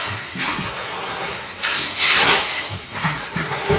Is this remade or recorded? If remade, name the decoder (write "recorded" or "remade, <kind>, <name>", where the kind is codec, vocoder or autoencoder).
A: remade, codec, SNAC